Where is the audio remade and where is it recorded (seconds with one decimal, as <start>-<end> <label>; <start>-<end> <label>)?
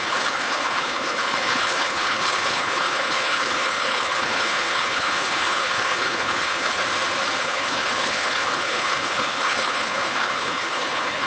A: 0.0-6.8 remade; 6.8-7.4 recorded; 7.4-11.3 remade